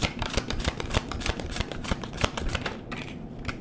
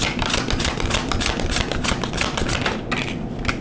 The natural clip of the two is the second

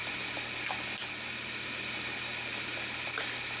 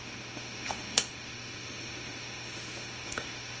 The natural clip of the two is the first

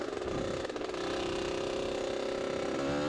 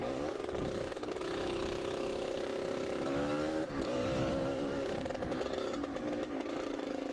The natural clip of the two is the first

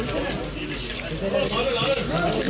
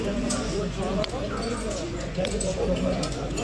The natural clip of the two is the first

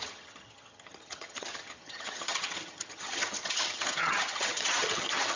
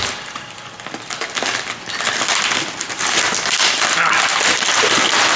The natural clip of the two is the second